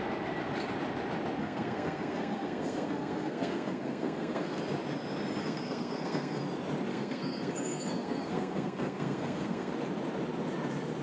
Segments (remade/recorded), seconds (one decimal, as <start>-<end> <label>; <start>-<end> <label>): 0.0-1.4 recorded; 1.4-4.6 remade; 4.6-5.4 recorded; 5.4-6.4 remade; 6.4-6.9 recorded; 6.9-9.7 remade; 9.7-11.0 recorded